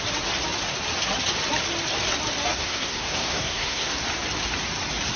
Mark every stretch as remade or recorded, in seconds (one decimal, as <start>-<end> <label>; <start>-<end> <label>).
0.0-2.5 recorded; 2.5-4.0 remade; 4.0-5.2 recorded